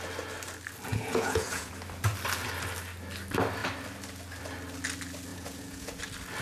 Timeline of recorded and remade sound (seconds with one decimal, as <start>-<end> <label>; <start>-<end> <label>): 0.0-0.9 recorded; 0.9-1.7 remade; 1.7-5.3 recorded; 5.3-6.0 remade; 6.0-6.4 recorded